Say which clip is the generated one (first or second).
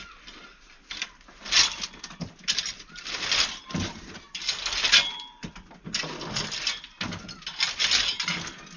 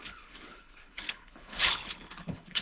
second